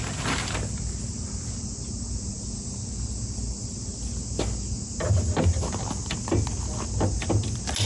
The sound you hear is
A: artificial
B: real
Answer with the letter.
B